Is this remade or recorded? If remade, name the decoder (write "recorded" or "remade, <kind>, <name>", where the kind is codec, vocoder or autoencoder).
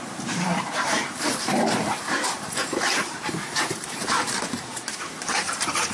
remade, vocoder, BigVGAN v2